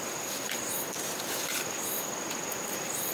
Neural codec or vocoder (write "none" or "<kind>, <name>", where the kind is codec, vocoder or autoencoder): none